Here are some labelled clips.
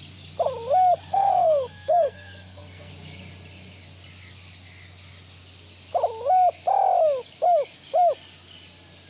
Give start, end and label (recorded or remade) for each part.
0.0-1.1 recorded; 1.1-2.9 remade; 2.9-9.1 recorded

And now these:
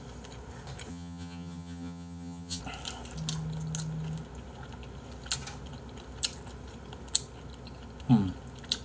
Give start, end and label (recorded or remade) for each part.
0.0-0.9 recorded; 0.9-2.6 remade; 2.6-8.8 recorded

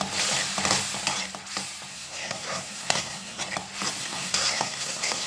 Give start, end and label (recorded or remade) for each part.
0.0-1.9 recorded; 1.9-3.4 remade; 3.4-4.0 recorded; 4.0-5.3 remade

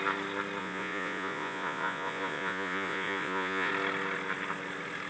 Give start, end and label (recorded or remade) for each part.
0.0-0.6 recorded; 0.6-3.7 remade; 3.7-5.1 recorded

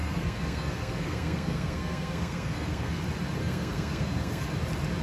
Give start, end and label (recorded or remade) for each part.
0.0-3.0 remade; 3.0-3.4 recorded; 3.4-4.4 remade; 4.4-5.0 recorded

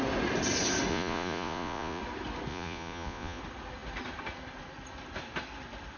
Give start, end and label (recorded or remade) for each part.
0.0-0.9 recorded; 0.9-2.0 remade; 2.0-2.5 recorded; 2.5-3.4 remade; 3.4-6.0 recorded